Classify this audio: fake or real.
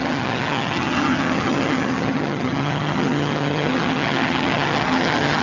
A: fake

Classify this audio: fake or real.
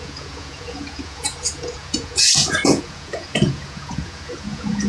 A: fake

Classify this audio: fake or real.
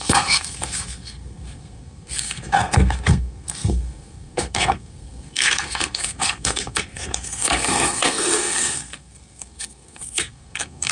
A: fake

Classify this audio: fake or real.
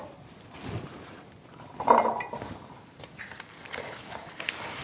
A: real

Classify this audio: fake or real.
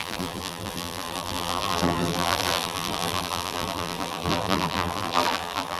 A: fake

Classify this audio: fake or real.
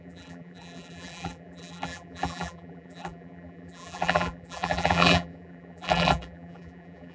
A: fake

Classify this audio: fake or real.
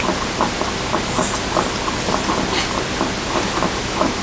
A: real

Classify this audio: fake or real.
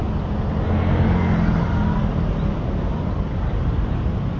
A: real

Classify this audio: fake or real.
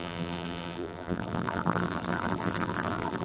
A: fake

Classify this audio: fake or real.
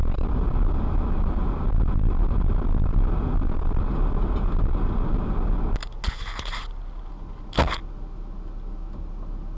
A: real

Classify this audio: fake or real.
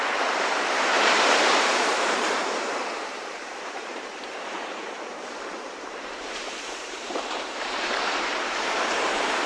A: fake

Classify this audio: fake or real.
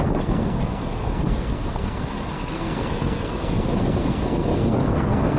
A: fake